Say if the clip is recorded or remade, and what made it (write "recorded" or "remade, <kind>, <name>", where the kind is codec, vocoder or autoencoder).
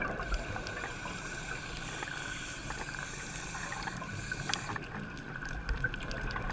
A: recorded